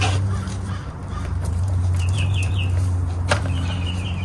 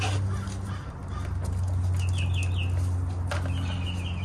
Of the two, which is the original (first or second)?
second